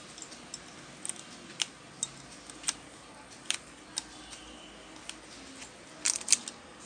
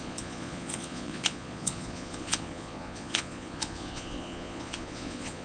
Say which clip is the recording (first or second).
first